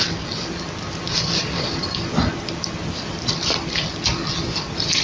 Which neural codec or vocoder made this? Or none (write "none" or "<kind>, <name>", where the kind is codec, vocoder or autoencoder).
none